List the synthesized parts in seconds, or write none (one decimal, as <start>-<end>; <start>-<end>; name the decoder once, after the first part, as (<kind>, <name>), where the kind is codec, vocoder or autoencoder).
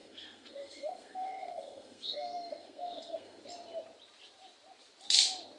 0.0-3.4 (codec, SNAC)